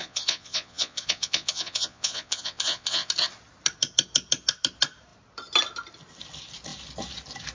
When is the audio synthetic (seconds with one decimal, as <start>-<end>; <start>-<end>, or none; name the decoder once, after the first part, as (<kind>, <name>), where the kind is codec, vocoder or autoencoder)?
0.0-3.1 (vocoder, Vocos)